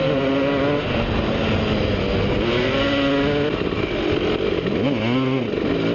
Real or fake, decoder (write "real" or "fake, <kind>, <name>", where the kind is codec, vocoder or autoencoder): real